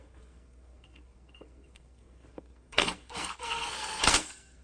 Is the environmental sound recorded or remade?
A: remade